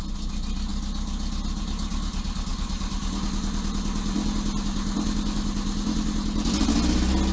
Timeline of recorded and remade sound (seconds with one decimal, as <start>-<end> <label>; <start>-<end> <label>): 0.0-7.3 recorded